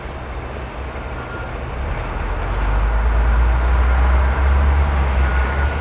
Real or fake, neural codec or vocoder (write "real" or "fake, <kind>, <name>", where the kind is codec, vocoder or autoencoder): real